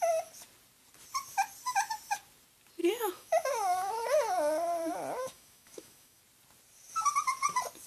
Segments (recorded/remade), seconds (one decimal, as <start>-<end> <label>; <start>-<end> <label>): 0.0-2.8 recorded; 2.8-3.9 remade; 3.9-5.2 recorded; 5.2-6.2 remade; 6.2-7.9 recorded